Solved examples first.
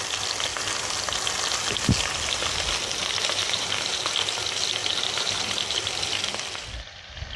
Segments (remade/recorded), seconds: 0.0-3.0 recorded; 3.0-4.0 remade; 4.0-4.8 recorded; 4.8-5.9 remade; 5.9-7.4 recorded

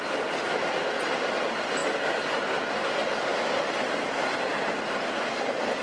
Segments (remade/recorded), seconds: 0.0-5.8 recorded

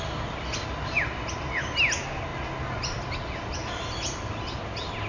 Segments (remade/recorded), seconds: 0.0-5.1 recorded

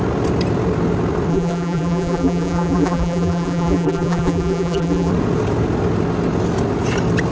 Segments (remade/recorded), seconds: 0.0-1.3 recorded; 1.3-5.1 remade; 5.1-7.3 recorded

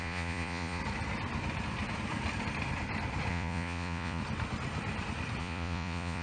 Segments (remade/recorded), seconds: 0.0-0.8 remade; 0.8-3.3 recorded; 3.3-4.2 remade; 4.2-5.4 recorded; 5.4-6.2 remade

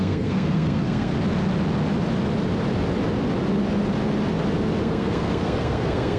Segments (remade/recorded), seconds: 0.0-1.1 remade; 1.1-4.8 recorded; 4.8-6.2 remade

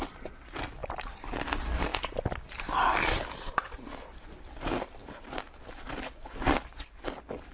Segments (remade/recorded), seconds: 0.0-0.8 recorded; 0.8-1.4 remade; 1.4-5.0 recorded; 5.0-5.6 remade; 5.6-7.5 recorded